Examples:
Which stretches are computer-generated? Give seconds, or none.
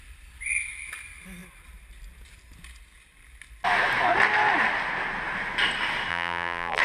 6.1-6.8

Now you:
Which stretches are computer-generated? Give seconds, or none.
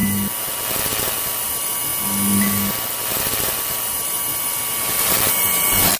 1.2-1.9; 2.9-6.0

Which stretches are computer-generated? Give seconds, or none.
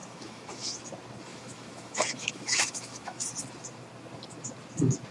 0.0-0.8; 1.3-3.3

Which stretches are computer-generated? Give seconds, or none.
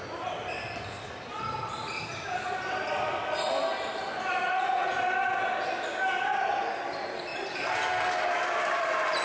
4.3-5.0